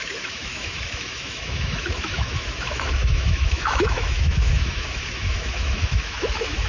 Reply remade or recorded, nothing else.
remade